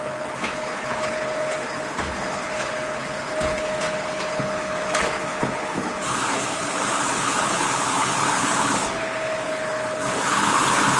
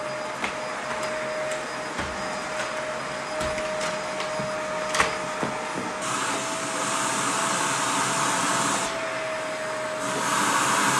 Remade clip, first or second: first